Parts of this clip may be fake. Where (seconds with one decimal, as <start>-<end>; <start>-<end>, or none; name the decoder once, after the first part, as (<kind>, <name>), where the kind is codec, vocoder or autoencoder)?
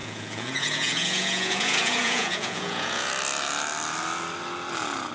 0.0-3.1 (vocoder, Vocos)